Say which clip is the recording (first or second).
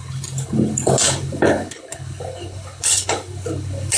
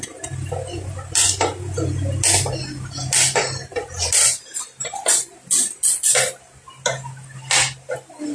second